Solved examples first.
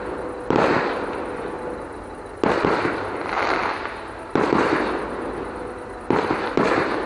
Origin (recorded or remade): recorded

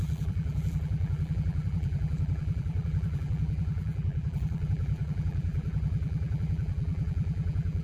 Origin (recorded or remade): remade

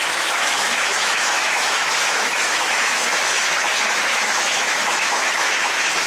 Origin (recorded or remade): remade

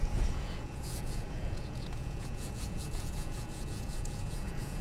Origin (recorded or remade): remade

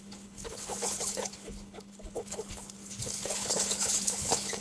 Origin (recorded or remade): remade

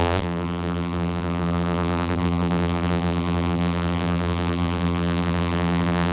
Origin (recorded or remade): remade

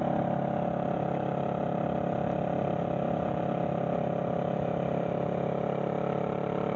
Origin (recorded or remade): recorded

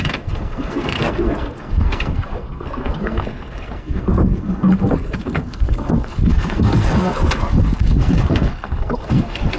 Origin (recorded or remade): remade